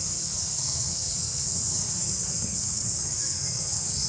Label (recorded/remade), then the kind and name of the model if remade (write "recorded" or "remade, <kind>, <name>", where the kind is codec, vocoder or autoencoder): remade, codec, SNAC